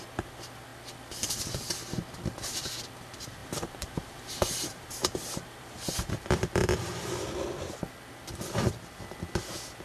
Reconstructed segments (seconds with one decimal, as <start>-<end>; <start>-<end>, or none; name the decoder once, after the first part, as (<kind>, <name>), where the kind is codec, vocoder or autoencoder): 3.4-6.1 (vocoder, BigVGAN v2)